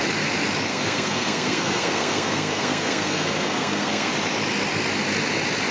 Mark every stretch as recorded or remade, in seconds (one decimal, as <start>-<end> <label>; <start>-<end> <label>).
0.0-0.7 recorded; 0.7-4.1 remade; 4.1-5.7 recorded